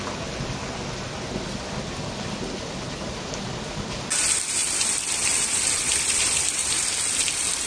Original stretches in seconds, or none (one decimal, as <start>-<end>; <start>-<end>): 0.0-4.6; 6.8-7.7